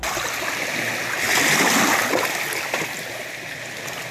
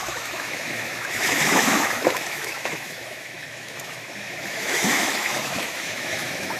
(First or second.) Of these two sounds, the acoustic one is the first